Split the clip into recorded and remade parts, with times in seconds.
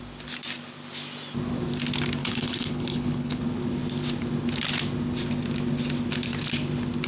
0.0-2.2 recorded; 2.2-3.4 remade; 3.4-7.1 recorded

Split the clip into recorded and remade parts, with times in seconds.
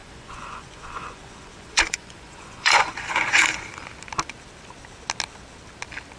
0.0-3.7 remade; 3.7-6.2 recorded